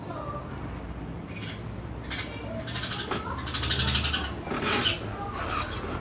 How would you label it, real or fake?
real